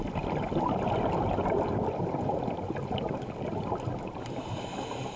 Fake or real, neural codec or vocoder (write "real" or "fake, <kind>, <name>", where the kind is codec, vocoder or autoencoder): real